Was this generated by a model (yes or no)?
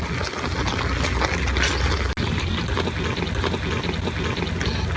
no